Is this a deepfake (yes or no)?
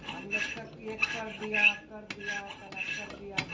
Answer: no